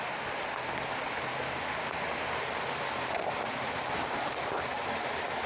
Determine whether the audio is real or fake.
real